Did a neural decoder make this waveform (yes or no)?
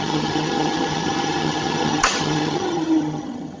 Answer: yes